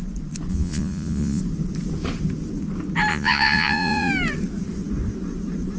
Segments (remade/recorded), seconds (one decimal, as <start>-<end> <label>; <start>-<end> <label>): 0.0-0.5 recorded; 0.5-1.4 remade; 1.4-3.1 recorded; 3.1-4.1 remade; 4.1-5.8 recorded